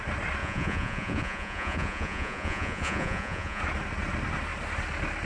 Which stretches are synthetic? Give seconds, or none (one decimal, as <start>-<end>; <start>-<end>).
0.4-3.6